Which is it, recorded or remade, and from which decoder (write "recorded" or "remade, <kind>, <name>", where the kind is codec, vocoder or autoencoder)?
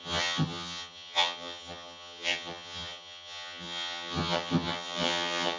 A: remade, vocoder, HiFi-GAN